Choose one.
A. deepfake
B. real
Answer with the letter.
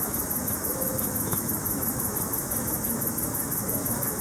A